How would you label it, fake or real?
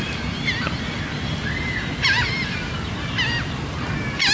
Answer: real